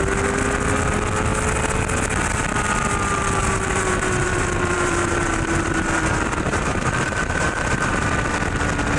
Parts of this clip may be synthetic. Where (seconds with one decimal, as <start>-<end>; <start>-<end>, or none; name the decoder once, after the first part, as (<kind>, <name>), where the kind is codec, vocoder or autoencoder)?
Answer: 3.4-8.1 (vocoder, BigVGAN v2)